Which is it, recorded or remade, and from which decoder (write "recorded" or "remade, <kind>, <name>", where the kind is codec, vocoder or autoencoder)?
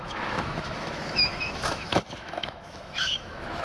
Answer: remade, autoencoder, DAC-VAE